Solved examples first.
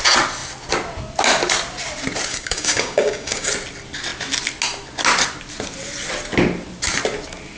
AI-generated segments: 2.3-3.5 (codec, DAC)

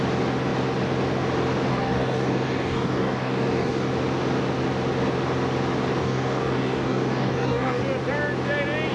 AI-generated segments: 1.7-3.9 (codec, DAC); 6.0-7.8

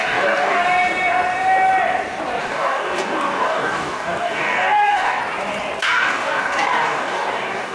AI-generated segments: 0.0-0.6 (codec, DAC); 2.4-5.2; 5.8-7.7

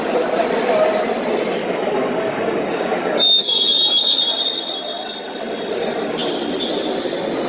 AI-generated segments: 1.6-4.2 (codec, DAC)

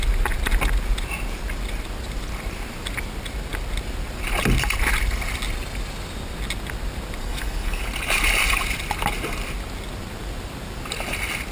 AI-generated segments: 7.2-7.9 (codec, DAC)